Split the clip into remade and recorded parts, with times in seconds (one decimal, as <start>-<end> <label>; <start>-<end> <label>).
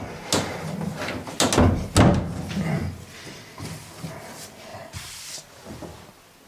0.0-4.7 recorded; 4.7-5.2 remade; 5.2-6.5 recorded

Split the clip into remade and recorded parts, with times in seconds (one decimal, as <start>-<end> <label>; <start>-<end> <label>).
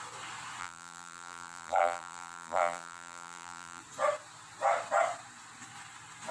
0.0-0.6 recorded; 0.6-3.8 remade; 3.8-6.3 recorded